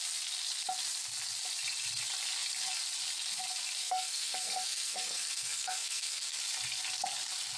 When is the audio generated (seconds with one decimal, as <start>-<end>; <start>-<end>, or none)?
3.8-6.4